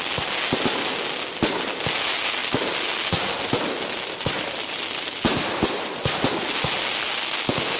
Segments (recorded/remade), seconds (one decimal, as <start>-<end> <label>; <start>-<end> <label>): 0.0-7.8 recorded